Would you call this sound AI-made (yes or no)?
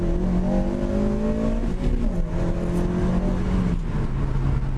no